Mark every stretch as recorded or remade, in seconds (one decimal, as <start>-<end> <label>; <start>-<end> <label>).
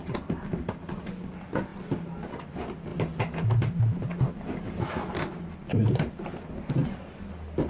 0.0-7.7 recorded